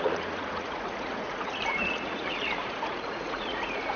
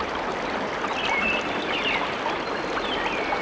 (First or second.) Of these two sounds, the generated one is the first